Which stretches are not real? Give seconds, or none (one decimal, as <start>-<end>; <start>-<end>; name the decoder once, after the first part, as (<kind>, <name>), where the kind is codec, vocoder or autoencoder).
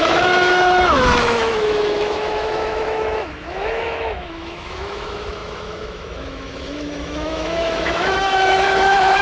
0.0-9.2 (autoencoder, DAC-VAE)